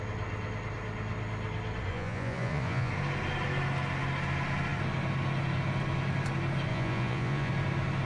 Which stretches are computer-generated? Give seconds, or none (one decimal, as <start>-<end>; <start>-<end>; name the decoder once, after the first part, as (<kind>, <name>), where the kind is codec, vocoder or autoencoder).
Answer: 1.9-2.9 (vocoder, Vocos); 6.7-7.5